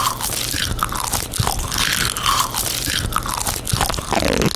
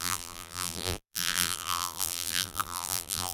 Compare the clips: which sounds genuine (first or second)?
first